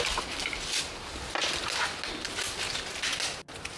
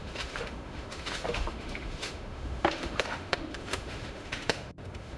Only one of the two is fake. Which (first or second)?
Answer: second